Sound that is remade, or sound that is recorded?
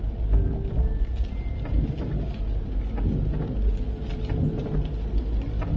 recorded